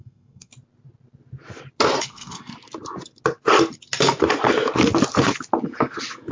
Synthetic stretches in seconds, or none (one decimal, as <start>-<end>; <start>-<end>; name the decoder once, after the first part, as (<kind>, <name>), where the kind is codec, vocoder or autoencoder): 0.0-0.5 (codec, SNAC); 2.0-2.5